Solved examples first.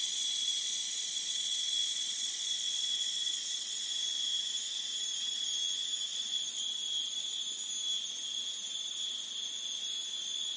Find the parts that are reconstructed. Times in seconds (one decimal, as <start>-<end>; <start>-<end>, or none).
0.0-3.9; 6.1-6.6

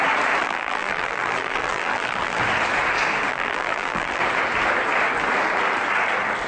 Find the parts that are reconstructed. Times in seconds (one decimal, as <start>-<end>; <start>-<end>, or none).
0.4-2.4; 3.3-4.2

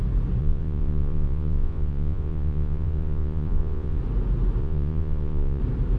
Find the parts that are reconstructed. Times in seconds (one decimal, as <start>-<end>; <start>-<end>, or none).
0.4-4.0; 4.6-5.6

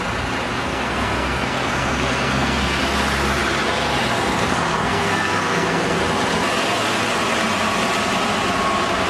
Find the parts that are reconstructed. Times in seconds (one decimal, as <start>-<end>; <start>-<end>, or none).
0.5-2.8; 4.4-6.0

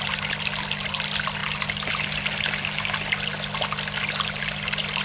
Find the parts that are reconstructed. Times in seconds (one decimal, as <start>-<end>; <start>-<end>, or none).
none

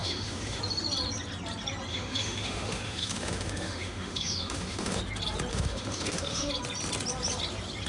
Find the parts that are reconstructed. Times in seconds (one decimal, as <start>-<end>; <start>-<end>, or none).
0.0-0.6; 1.9-5.0; 5.5-6.5

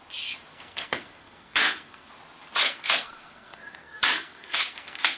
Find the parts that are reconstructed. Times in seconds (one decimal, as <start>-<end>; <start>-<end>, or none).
0.5-2.1; 2.6-5.2